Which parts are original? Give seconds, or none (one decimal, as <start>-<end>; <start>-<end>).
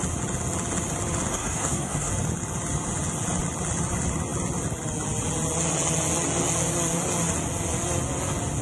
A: 0.0-1.3; 2.1-8.6